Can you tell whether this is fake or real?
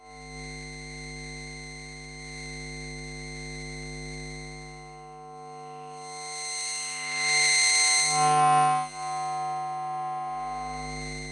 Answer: real